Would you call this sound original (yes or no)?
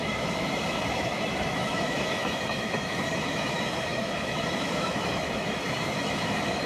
no